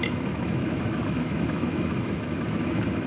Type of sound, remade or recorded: remade